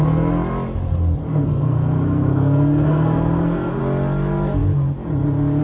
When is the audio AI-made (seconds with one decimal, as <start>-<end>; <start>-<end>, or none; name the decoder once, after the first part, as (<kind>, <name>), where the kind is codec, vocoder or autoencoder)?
1.2-3.8 (codec, SNAC)